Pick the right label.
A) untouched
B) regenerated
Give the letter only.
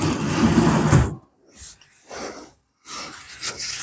A